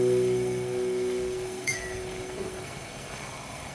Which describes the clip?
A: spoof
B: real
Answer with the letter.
A